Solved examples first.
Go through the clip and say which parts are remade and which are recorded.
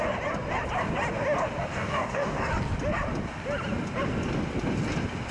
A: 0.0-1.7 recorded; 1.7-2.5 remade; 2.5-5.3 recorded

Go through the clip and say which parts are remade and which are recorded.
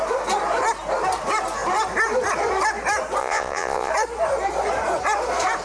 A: 0.0-3.2 recorded; 3.2-3.9 remade; 3.9-5.6 recorded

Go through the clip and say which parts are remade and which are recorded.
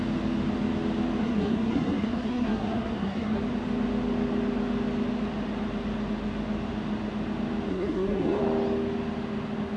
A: 0.0-1.2 recorded; 1.2-3.4 remade; 3.4-7.7 recorded; 7.7-8.4 remade; 8.4-9.8 recorded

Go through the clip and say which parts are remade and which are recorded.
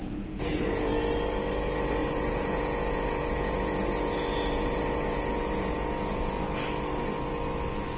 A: 0.0-0.9 remade; 0.9-2.0 recorded; 2.0-6.4 remade; 6.4-8.0 recorded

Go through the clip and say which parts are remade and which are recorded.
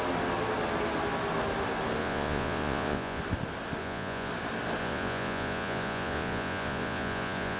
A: 0.0-2.0 recorded; 2.0-3.2 remade; 3.2-3.8 recorded; 3.8-4.3 remade; 4.3-4.8 recorded; 4.8-7.6 remade